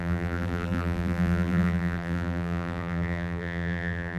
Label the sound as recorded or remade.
remade